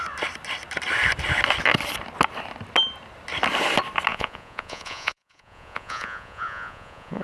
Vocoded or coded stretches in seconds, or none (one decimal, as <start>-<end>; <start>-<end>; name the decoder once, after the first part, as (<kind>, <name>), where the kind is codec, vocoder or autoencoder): 4.1-7.2 (vocoder, Vocos)